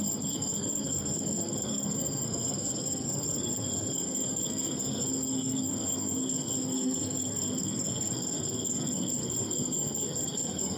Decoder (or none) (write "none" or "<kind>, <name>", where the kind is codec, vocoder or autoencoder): codec, SNAC